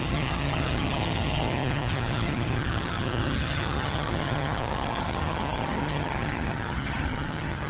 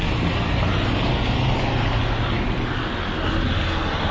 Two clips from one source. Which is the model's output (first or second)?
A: first